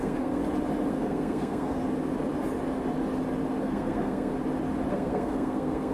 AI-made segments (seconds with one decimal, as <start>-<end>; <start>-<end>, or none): 0.0-0.4; 0.9-1.8; 3.6-4.3; 4.9-5.9